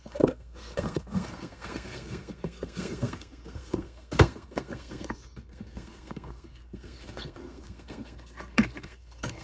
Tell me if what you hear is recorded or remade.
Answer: remade